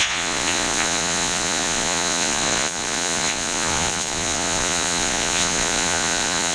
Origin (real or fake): fake